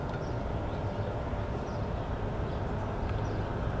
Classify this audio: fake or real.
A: real